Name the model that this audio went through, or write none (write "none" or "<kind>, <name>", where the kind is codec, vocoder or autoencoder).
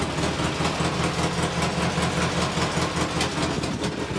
none